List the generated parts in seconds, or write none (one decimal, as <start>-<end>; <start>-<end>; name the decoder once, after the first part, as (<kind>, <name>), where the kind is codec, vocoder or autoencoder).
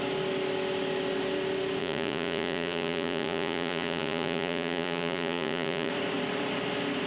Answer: 1.8-5.9 (vocoder, Vocos)